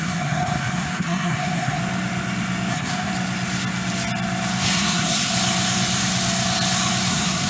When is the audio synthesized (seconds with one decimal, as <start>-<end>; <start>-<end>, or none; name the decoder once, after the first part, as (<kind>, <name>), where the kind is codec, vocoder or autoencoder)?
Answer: 0.0-1.8 (codec, SNAC); 2.7-3.1; 4.6-5.3; 7.1-7.5